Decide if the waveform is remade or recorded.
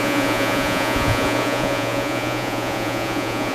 remade